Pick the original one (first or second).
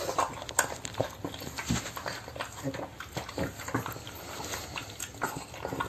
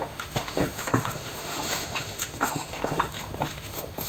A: first